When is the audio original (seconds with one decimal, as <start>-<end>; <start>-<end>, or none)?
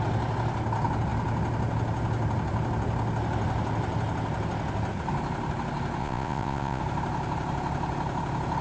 0.0-6.0; 6.8-8.6